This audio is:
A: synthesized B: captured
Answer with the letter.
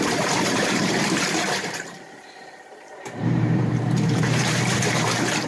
A